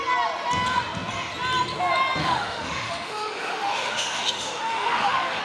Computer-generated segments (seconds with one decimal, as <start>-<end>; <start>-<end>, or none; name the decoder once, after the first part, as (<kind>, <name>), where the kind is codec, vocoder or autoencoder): 2.2-5.4 (autoencoder, DAC-VAE)